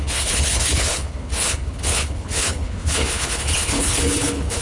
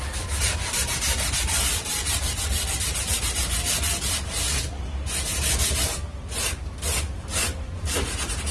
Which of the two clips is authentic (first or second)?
second